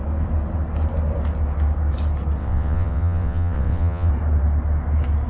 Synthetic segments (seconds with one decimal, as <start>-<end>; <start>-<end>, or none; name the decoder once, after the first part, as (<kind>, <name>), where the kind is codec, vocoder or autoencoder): 2.4-4.1 (vocoder, WaveNeXt)